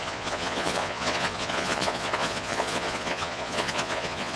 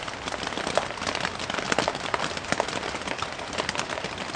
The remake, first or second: first